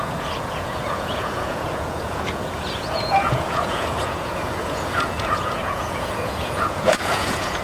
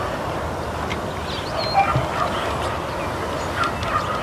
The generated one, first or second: first